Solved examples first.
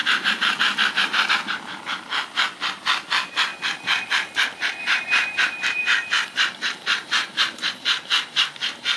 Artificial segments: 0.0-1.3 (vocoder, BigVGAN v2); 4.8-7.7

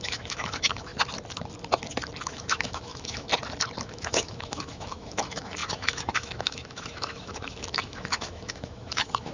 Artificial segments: 0.0-0.9 (autoencoder, DAC-VAE); 2.2-3.3; 3.8-9.3

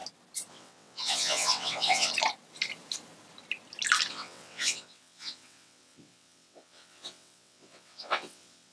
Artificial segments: 0.5-2.1 (vocoder, WaveNeXt); 4.1-8.7

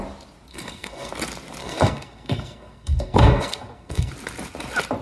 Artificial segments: 0.5-1.1 (codec, SNAC); 1.6-4.1

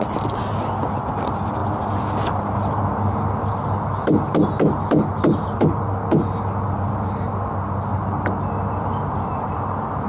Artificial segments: none

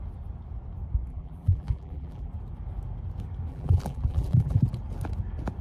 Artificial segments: 1.1-2.3 (vocoder, BigVGAN v2); 3.5-4.6

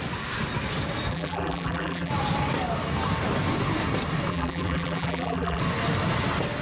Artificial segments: 1.1-2.1 (vocoder, BigVGAN v2); 4.3-5.6